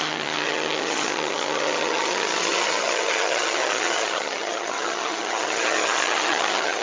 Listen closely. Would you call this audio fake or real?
fake